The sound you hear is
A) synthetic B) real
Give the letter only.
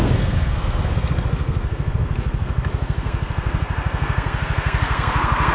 A